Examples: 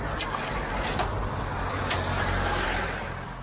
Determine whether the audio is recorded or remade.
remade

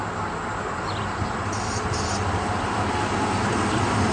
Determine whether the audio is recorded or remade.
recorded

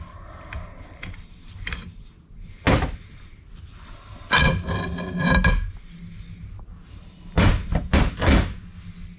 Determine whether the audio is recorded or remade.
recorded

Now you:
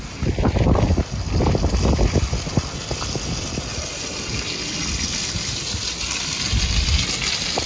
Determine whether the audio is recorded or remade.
recorded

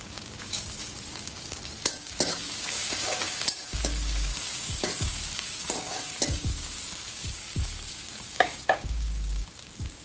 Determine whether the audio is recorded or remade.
remade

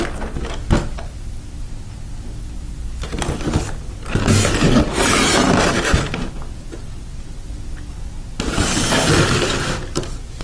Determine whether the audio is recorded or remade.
recorded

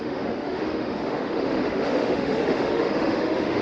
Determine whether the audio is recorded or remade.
remade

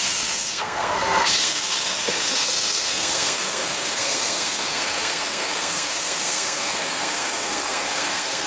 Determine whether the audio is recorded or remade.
remade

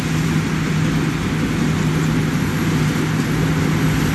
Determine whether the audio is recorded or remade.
recorded